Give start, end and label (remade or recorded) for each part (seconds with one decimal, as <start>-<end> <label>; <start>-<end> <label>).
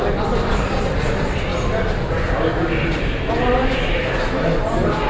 0.0-3.6 recorded; 3.6-4.3 remade; 4.3-5.1 recorded